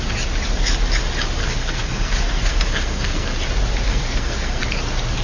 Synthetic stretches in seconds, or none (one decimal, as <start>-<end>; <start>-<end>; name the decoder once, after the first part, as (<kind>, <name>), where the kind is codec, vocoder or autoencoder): 1.4-3.3 (codec, SNAC); 3.9-4.6